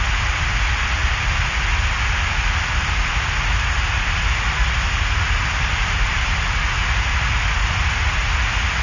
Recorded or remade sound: recorded